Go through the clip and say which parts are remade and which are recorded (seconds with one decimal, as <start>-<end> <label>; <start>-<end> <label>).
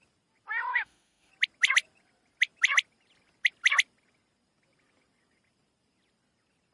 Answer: 0.0-0.7 recorded; 0.7-1.3 remade; 1.3-6.7 recorded